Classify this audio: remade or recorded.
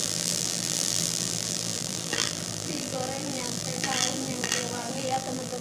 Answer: remade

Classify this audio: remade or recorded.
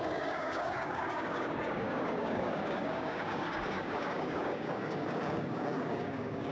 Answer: remade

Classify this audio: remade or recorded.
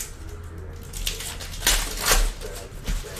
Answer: recorded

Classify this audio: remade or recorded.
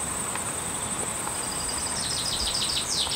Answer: recorded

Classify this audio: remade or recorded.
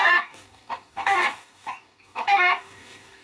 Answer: remade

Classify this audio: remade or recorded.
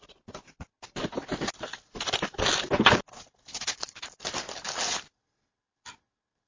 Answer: recorded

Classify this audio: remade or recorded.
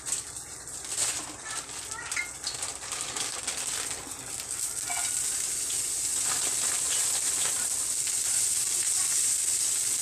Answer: recorded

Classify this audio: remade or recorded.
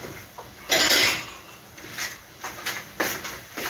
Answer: recorded